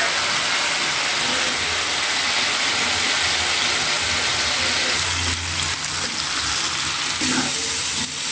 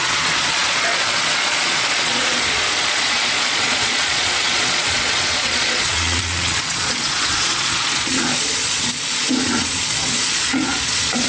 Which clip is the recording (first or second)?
first